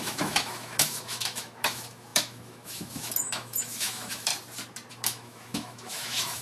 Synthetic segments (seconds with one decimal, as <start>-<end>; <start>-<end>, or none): 0.0-4.3; 4.9-6.4